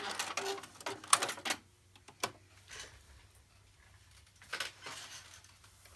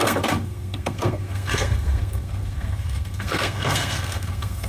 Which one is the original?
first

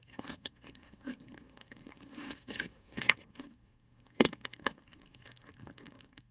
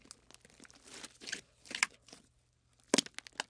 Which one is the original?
second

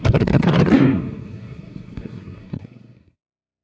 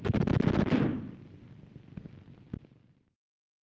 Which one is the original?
second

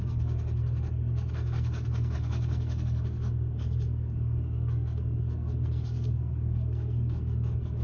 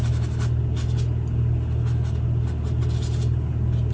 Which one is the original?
second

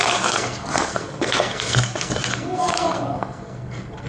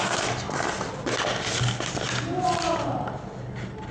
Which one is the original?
second